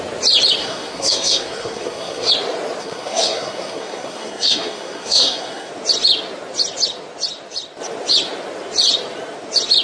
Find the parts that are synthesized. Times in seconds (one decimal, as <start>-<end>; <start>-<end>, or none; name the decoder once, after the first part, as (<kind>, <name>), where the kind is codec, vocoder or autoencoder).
0.6-2.3 (codec, SNAC); 2.8-5.7